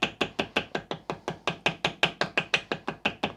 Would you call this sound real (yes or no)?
yes